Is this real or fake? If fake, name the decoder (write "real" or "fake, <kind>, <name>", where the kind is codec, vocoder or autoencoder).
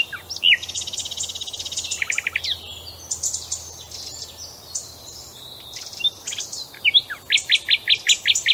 real